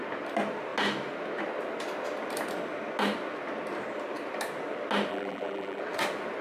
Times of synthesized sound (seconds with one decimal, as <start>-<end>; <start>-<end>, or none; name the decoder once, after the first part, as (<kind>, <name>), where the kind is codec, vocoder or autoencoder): 5.1-5.8 (vocoder, BigVGAN v2)